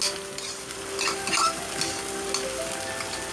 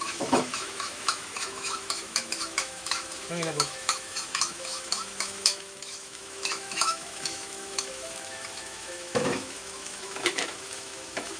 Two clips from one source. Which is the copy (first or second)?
second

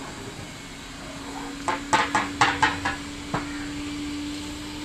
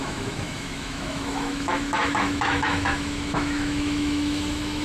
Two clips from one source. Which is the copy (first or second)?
second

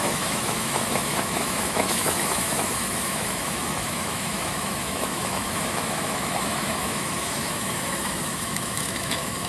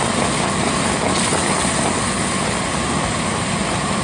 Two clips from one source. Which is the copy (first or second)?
first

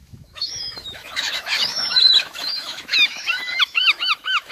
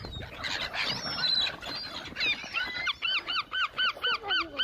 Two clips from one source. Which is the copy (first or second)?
first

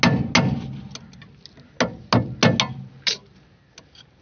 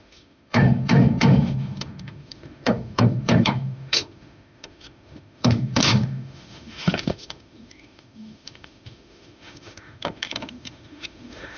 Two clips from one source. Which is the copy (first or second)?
second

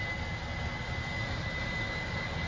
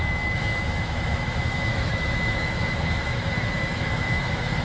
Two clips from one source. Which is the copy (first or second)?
second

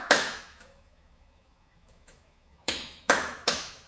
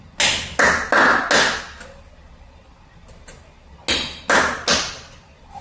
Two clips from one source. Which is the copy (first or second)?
first